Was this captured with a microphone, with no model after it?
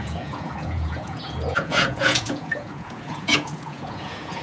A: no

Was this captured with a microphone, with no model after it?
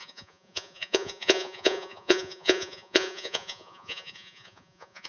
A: no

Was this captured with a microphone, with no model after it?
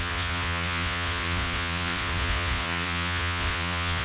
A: no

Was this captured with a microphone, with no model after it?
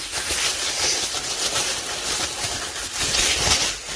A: yes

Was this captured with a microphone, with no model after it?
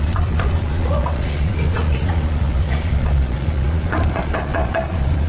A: no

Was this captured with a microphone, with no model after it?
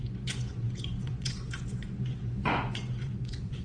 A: no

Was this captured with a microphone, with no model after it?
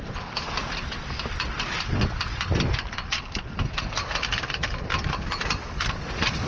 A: yes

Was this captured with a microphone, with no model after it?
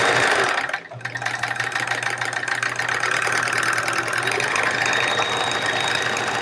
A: yes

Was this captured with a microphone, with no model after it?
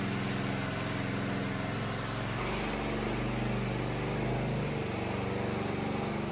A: yes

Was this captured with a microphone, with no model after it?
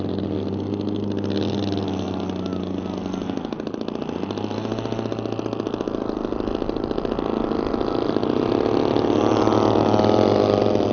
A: yes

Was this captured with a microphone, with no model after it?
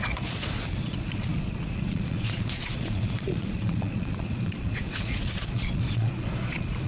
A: no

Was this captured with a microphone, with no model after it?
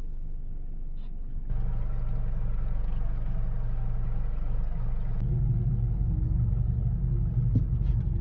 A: yes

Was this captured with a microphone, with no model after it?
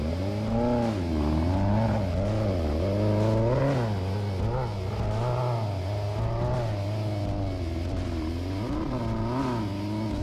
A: yes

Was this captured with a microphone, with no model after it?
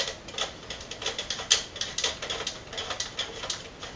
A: yes